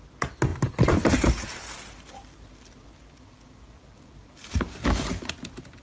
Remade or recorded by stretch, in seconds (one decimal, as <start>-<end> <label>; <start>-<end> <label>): 0.0-5.8 recorded

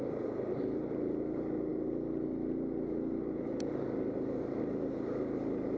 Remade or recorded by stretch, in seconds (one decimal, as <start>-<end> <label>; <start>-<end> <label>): 0.0-5.8 recorded

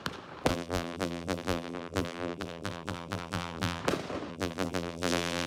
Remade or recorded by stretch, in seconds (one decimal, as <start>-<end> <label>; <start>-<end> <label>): 0.0-0.5 recorded; 0.5-3.8 remade; 3.8-4.3 recorded; 4.3-5.5 remade

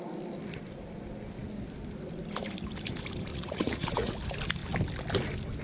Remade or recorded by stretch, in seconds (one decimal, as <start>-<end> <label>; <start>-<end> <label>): 0.0-3.3 recorded; 3.3-4.1 remade; 4.1-5.6 recorded

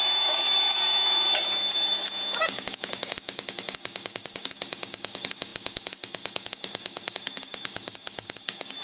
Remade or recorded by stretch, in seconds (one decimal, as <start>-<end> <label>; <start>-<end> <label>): 0.0-8.8 remade

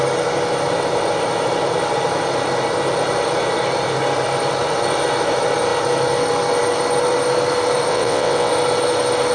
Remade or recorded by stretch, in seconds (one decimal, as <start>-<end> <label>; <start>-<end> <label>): 0.0-7.9 recorded; 7.9-8.5 remade; 8.5-9.3 recorded

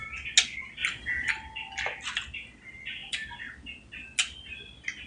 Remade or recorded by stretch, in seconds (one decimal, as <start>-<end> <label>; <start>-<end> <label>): 0.0-5.1 recorded

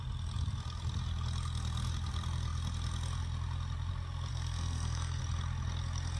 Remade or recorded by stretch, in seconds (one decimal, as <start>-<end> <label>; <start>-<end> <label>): 0.0-4.3 recorded; 4.3-5.2 remade; 5.2-6.2 recorded